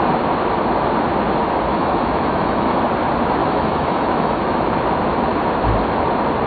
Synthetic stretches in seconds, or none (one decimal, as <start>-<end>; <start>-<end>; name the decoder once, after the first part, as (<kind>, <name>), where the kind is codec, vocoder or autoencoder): 1.7-2.8 (autoencoder, DAC-VAE); 3.4-4.6